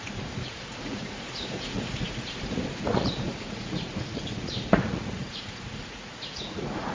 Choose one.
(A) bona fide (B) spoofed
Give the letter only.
B